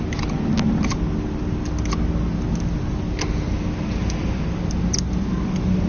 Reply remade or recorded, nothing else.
recorded